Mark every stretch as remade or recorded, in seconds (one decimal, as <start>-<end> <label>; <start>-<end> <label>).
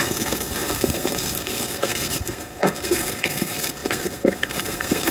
0.0-5.1 remade